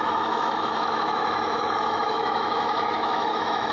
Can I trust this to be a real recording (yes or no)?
no